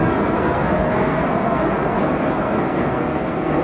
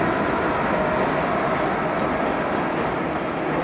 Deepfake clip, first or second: first